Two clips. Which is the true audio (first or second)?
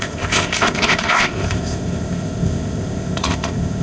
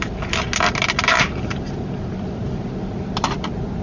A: second